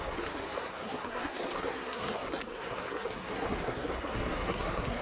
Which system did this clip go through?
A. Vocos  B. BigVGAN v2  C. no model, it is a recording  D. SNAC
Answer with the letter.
D